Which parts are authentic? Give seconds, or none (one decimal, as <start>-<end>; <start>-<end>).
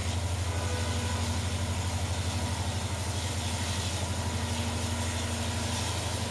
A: 0.0-6.3